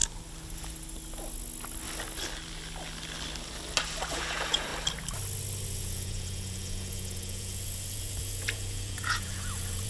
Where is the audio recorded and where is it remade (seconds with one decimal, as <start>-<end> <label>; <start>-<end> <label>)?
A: 0.0-4.1 recorded; 4.1-4.7 remade; 4.7-5.7 recorded; 5.7-9.9 remade